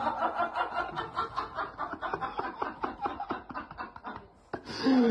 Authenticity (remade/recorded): recorded